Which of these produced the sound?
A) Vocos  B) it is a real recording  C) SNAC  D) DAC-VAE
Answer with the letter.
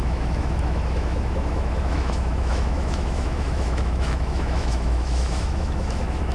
D